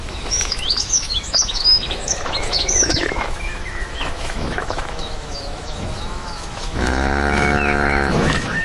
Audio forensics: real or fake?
fake